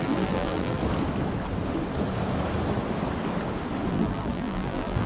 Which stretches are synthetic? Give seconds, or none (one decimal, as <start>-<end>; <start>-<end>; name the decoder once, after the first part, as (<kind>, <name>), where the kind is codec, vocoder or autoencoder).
0.0-0.8 (vocoder, BigVGAN v2); 3.9-5.1